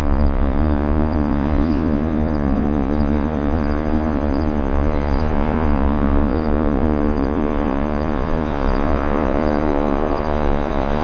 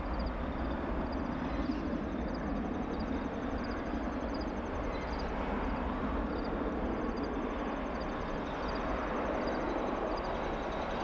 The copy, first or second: first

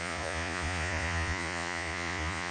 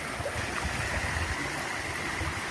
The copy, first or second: first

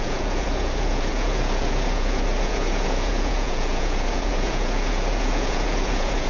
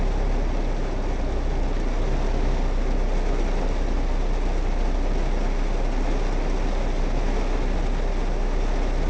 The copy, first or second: first